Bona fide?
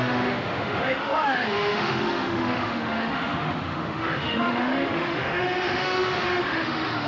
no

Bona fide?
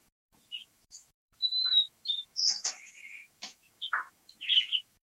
no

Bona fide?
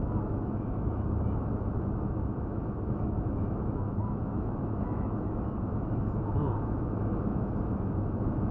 no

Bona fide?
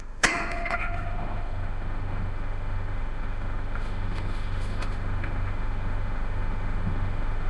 no